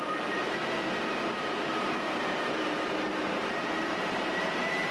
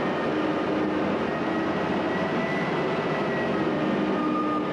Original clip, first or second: second